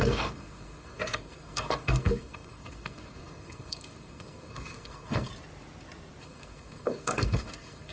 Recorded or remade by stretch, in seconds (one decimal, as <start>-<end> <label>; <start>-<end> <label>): 0.0-5.3 remade; 5.3-6.2 recorded; 6.2-7.9 remade